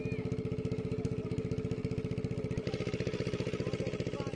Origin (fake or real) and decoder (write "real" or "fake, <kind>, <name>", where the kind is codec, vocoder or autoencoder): real